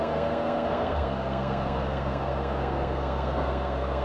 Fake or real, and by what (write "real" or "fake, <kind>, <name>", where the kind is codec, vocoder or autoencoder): fake, codec, SNAC